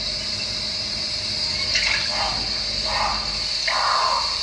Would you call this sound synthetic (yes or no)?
no